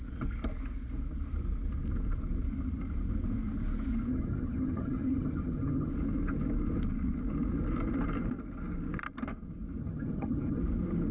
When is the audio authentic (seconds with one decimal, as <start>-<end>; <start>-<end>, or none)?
0.0-4.1; 5.9-9.8; 10.6-11.1